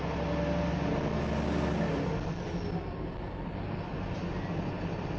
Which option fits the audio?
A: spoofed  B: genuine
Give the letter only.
B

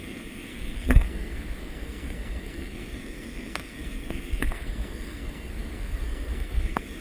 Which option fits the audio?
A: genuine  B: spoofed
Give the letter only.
B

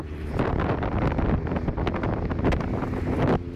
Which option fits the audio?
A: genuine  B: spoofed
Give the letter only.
A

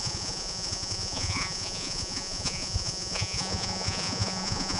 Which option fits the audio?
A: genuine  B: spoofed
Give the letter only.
B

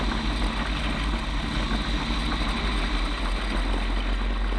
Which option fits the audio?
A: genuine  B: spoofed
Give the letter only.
A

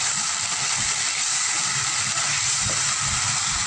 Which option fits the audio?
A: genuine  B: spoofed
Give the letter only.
A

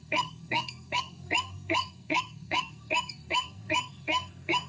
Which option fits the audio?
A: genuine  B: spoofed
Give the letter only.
B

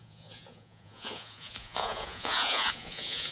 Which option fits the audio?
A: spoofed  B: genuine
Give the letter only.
A